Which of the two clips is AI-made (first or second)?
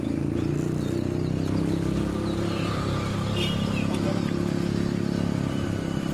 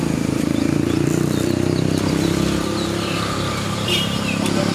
second